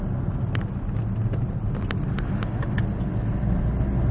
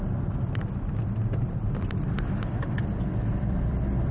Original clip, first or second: first